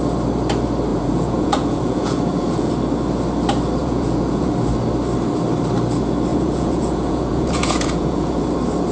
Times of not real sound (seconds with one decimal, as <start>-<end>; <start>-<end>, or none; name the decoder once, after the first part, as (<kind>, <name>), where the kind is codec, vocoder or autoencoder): 0.9-2.7 (vocoder, Vocos); 3.8-4.5; 6.3-8.4